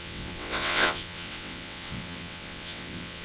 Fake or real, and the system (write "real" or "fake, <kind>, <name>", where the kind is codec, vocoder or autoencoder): fake, vocoder, WaveNeXt